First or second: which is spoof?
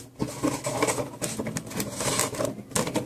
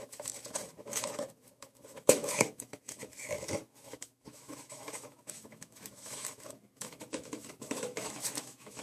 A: second